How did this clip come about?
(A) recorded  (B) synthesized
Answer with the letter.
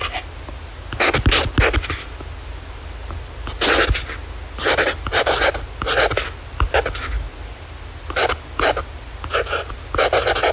A